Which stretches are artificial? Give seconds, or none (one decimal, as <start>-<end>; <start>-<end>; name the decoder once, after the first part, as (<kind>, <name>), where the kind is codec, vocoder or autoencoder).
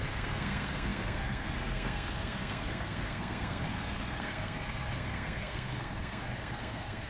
0.0-7.1 (codec, SNAC)